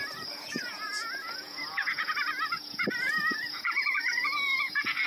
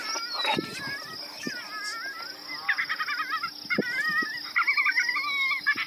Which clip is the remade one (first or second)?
first